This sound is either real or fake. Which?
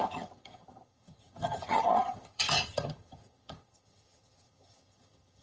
fake